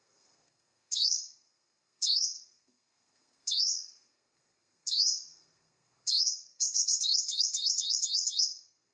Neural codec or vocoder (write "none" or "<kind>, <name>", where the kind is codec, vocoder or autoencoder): codec, SNAC